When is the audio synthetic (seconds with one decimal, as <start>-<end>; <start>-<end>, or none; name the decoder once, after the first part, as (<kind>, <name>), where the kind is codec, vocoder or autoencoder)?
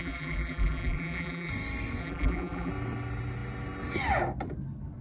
0.0-1.5 (vocoder, BigVGAN v2); 2.0-2.7